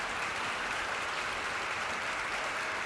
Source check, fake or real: real